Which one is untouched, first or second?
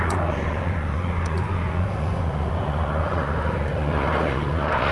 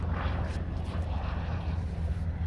second